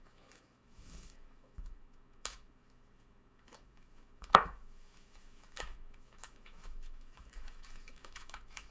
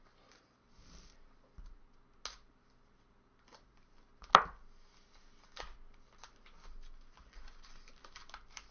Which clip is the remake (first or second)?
first